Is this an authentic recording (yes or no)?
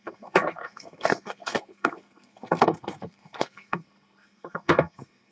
no